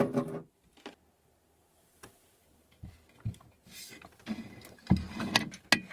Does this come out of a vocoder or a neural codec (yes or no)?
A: no